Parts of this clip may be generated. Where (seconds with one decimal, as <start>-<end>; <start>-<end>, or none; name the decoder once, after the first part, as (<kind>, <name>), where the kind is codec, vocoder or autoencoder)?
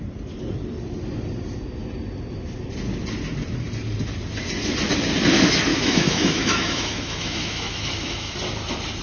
5.7-8.3 (autoencoder, DAC-VAE)